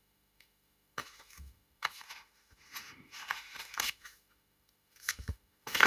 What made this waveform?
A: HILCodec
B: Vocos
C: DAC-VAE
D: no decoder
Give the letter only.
C